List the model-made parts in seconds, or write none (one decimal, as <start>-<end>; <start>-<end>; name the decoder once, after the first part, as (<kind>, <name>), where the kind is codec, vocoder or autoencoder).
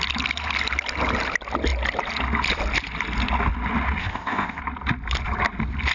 4.0-4.6 (codec, ZipCodec)